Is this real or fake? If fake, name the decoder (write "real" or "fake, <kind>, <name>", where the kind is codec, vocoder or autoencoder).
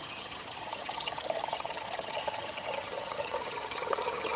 fake, vocoder, HiFi-GAN